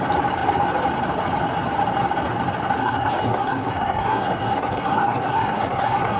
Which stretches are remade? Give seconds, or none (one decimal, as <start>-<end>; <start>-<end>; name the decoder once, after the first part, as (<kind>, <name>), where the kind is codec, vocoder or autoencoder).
2.8-6.2 (codec, SNAC)